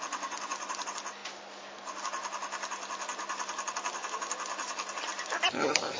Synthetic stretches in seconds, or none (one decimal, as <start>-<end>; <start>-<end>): none